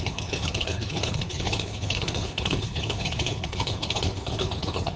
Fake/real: fake